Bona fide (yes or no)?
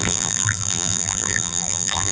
no